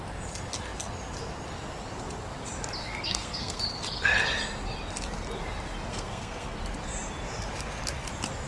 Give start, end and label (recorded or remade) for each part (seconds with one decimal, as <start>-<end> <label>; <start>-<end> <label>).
0.0-2.9 recorded; 2.9-3.6 remade; 3.6-5.9 recorded; 5.9-6.6 remade; 6.6-8.5 recorded